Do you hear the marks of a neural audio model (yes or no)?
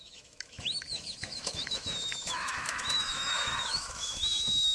yes